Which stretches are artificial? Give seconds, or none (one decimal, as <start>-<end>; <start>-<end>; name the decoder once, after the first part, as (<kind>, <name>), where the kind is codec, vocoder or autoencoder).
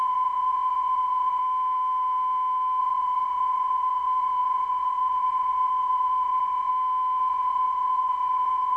0.0-1.4 (vocoder, Vocos); 2.8-6.7; 7.2-8.8